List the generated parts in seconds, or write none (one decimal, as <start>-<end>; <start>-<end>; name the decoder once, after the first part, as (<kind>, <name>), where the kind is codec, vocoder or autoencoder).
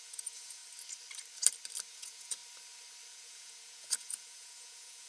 0.0-0.6 (vocoder, Vocos); 1.9-2.4; 3.1-5.1